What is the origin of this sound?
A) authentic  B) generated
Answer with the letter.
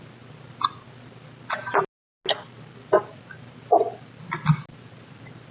A